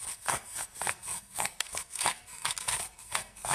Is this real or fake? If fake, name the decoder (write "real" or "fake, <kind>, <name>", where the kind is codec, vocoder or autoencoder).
fake, codec, SNAC